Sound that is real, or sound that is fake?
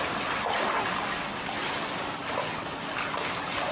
real